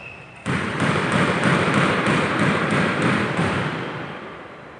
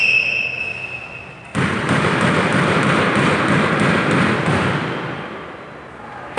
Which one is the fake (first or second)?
first